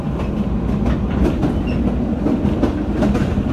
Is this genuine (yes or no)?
yes